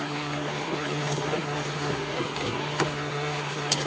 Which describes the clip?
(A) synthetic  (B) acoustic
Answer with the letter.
A